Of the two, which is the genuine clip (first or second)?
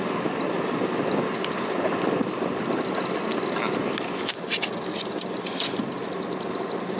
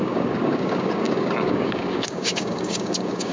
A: first